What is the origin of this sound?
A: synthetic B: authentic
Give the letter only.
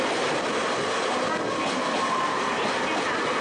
B